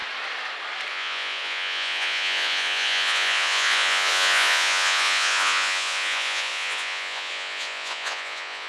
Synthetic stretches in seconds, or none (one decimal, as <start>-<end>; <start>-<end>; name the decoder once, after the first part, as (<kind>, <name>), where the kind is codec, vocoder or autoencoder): 0.9-8.7 (vocoder, Vocos)